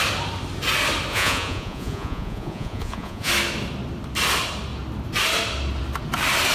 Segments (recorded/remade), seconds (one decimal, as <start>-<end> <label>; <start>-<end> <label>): 0.0-1.1 recorded; 1.1-3.3 remade; 3.3-6.5 recorded